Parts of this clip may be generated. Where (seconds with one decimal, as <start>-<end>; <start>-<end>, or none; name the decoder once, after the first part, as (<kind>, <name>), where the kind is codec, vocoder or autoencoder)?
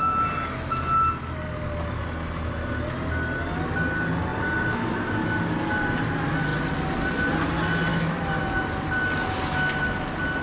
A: 7.9-8.4 (autoencoder, DAC-VAE)